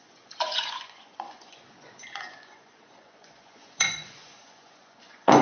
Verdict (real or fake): fake